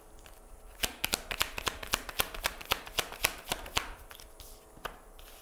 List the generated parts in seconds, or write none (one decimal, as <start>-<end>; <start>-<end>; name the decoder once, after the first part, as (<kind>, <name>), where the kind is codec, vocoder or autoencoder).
none